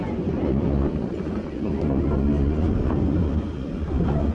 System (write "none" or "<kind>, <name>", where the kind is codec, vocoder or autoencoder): vocoder, Vocos